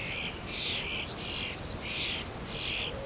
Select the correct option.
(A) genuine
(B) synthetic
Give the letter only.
A